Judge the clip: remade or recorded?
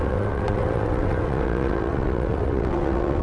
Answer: remade